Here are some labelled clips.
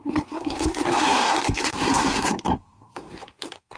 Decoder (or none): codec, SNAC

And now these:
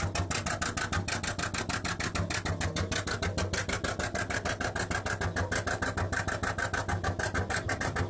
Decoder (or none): none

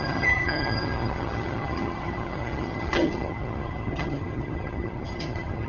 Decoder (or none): vocoder, HiFi-GAN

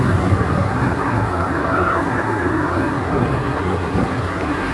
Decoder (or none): codec, SNAC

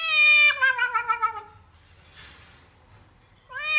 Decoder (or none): none